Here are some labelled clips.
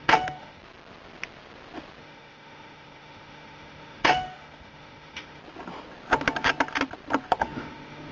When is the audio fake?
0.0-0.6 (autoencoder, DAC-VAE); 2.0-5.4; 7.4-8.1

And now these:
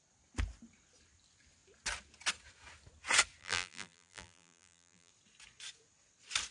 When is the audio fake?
3.4-5.1 (vocoder, BigVGAN v2)

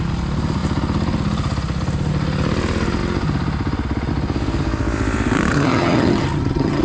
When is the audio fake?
5.5-6.8 (vocoder, HiFi-GAN)

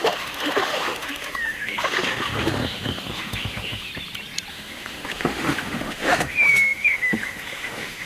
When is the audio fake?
0.0-3.9 (autoencoder, DAC-VAE); 4.5-8.1

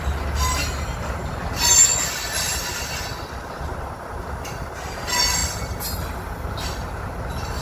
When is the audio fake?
3.1-4.1 (vocoder, BigVGAN v2)